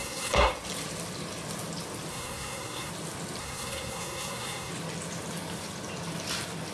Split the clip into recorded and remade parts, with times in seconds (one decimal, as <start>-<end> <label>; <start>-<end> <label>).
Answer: 0.0-0.5 remade; 0.5-2.1 recorded; 2.1-2.9 remade; 2.9-3.4 recorded; 3.4-4.7 remade; 4.7-6.7 recorded